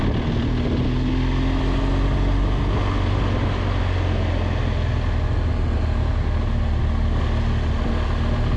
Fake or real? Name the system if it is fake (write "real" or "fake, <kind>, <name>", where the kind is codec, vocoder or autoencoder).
real